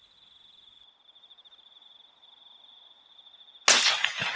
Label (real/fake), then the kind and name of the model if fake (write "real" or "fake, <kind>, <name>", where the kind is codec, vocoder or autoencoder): real